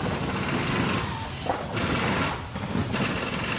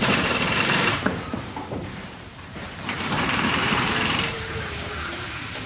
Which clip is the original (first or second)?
first